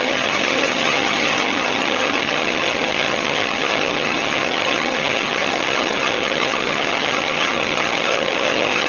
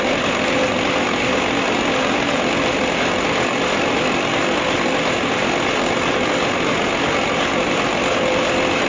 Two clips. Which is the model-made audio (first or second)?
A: first